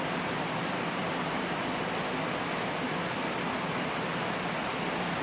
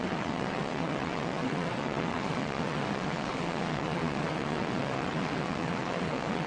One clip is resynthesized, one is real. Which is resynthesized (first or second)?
second